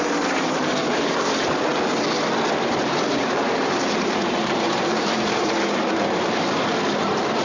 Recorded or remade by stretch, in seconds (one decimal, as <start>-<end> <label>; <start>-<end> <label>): 0.0-1.7 remade; 1.7-2.5 recorded; 2.5-7.4 remade